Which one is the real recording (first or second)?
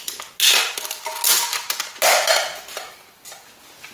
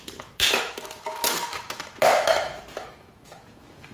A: first